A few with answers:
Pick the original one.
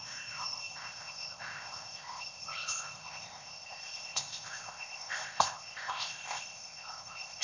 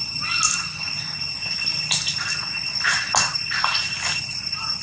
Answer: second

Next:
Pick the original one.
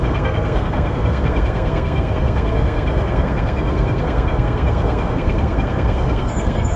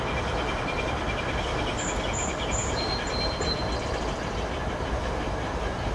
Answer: second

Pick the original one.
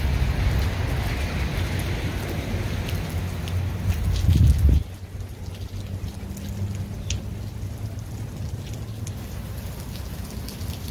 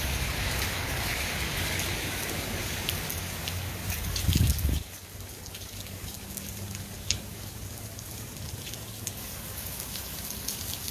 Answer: first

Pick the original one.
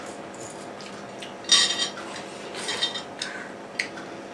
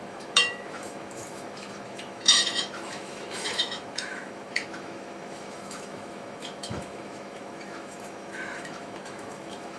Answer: first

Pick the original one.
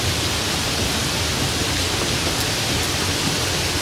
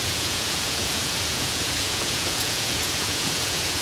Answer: first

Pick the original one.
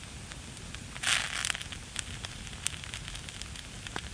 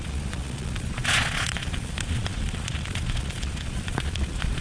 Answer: first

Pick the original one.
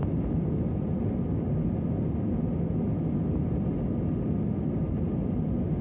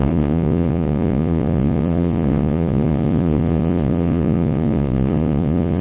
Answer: first